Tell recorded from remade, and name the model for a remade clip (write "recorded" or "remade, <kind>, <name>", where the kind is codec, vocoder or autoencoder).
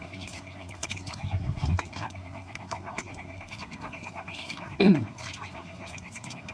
remade, codec, SNAC